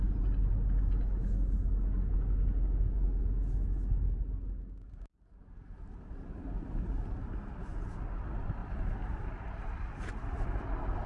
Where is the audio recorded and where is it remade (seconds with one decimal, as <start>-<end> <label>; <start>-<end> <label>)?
0.0-8.6 recorded; 8.6-11.1 remade